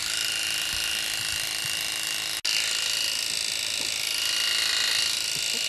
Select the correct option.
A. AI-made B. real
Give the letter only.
B